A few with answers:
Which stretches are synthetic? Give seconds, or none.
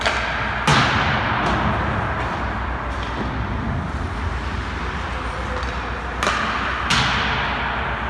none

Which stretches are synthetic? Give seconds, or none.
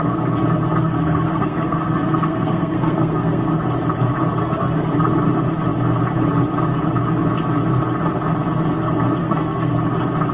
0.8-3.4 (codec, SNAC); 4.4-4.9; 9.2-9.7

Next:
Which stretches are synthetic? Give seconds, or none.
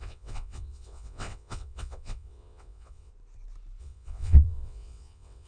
0.0-3.1 (vocoder, WaveNeXt); 3.8-5.5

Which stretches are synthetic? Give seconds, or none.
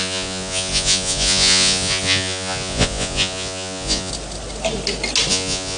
0.0-4.1 (vocoder, Vocos); 5.3-5.8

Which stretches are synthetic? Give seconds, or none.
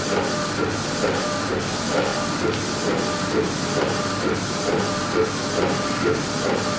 none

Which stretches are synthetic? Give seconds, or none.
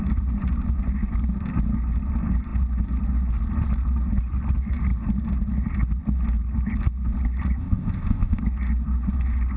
7.6-8.4 (codec, ZipCodec)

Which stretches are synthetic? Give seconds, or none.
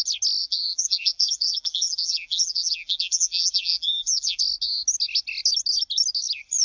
0.4-4.4 (vocoder, BigVGAN v2)